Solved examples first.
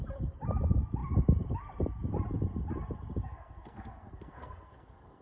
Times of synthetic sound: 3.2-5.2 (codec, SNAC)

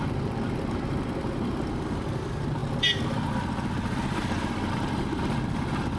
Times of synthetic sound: none

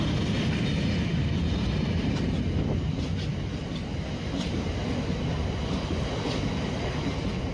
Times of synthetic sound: none

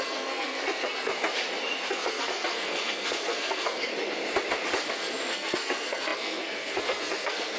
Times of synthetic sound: 0.0-1.1 (codec, SNAC); 1.9-3.9; 4.9-7.6

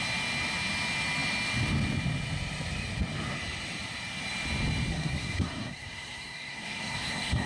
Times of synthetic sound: 4.9-7.5 (codec, SNAC)

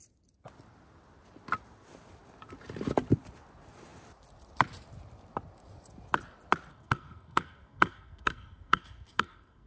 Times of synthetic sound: 6.7-9.7 (codec, SNAC)

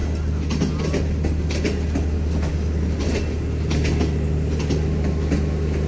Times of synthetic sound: none

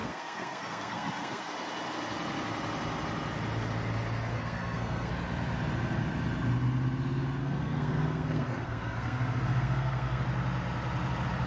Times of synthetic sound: 0.0-1.5 (codec, SNAC); 4.3-5.1; 7.4-10.2